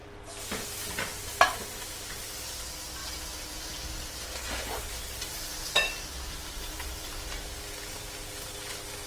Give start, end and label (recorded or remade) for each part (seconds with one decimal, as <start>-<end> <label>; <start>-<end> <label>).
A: 0.0-1.1 recorded; 1.1-1.9 remade; 1.9-3.0 recorded; 3.0-7.6 remade; 7.6-9.1 recorded